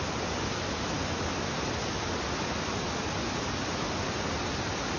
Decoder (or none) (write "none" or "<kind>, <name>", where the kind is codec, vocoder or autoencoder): none